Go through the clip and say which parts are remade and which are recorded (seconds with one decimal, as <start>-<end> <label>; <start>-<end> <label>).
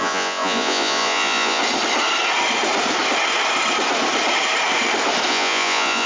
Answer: 0.0-1.6 remade; 1.6-5.3 recorded; 5.3-6.1 remade